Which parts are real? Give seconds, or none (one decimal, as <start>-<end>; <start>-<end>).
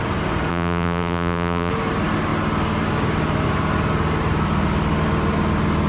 0.0-0.5; 1.7-5.9